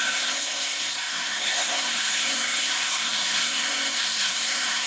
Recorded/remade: remade